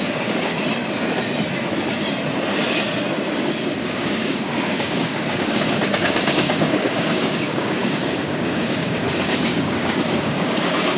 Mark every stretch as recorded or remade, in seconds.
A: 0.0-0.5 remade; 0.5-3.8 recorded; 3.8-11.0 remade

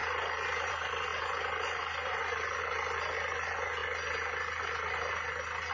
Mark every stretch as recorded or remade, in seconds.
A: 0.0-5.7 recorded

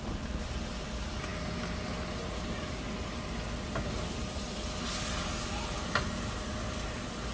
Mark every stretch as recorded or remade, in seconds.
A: 0.0-7.3 recorded

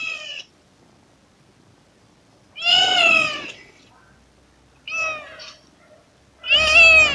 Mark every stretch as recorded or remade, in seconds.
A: 0.0-0.5 remade; 0.5-2.7 recorded; 2.7-3.9 remade; 3.9-7.1 recorded

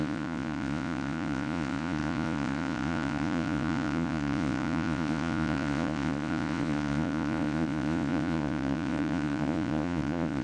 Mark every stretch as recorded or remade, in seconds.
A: 0.0-10.4 remade